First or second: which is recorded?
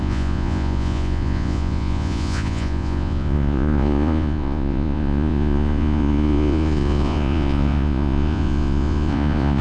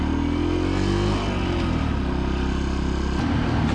second